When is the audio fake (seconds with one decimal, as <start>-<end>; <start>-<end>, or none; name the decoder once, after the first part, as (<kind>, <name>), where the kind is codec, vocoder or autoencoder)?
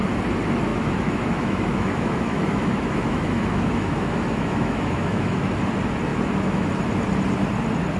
0.7-5.5 (autoencoder, DAC-VAE); 6.1-6.7